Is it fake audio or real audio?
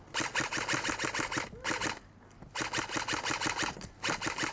real